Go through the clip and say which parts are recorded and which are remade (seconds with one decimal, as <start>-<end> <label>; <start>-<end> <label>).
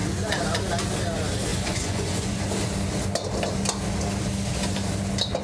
0.0-1.5 recorded; 1.5-2.4 remade; 2.4-5.4 recorded